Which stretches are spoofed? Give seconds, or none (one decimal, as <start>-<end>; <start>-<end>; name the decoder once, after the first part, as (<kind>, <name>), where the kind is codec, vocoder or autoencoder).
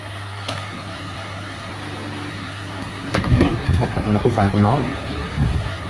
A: 0.0-1.7 (codec, SNAC); 2.3-5.9